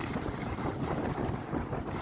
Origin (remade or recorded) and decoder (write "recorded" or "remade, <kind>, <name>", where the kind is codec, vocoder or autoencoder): remade, vocoder, BigVGAN v2